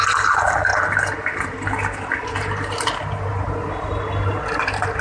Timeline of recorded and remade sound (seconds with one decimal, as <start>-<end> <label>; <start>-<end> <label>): 0.0-5.0 recorded